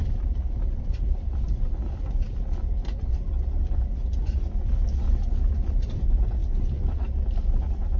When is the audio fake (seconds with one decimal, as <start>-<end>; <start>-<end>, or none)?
0.0-3.1; 6.4-6.9